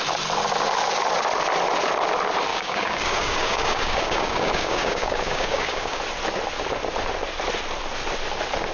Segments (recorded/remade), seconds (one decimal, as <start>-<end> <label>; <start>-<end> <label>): 0.0-2.5 recorded; 2.5-6.0 remade; 6.0-8.7 recorded